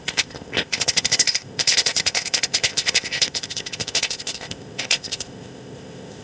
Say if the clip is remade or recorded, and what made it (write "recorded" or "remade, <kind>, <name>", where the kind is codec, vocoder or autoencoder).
remade, codec, ZipCodec